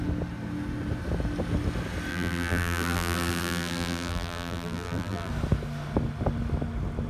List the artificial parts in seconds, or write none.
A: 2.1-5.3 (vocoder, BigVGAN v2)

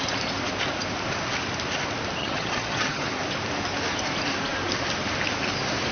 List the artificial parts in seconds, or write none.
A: 2.2-3.2 (vocoder, HiFi-GAN)

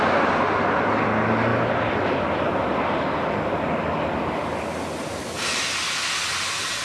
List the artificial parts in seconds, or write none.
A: none

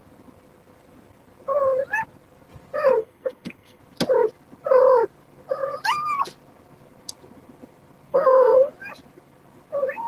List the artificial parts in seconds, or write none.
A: 3.0-3.8 (codec, SNAC); 8.1-8.7

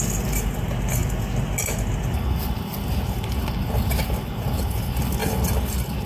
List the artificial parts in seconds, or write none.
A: none

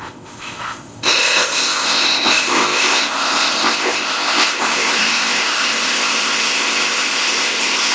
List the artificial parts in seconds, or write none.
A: 0.0-7.9 (codec, ZipCodec)